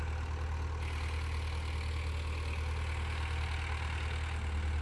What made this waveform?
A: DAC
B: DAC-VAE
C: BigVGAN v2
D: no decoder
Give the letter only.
D